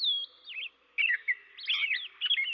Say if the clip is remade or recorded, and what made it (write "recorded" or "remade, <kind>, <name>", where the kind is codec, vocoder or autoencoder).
recorded